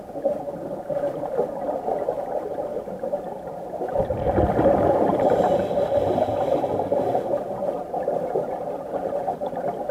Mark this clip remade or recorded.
remade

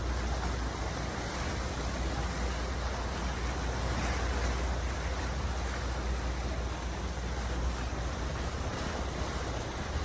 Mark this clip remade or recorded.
recorded